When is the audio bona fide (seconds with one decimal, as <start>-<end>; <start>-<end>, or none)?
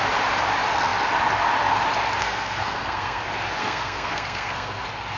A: 0.0-2.2; 3.2-3.6; 4.8-5.2